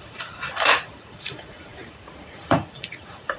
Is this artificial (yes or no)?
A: yes